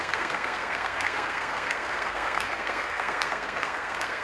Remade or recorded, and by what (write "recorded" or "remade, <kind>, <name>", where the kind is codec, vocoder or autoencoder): remade, codec, SNAC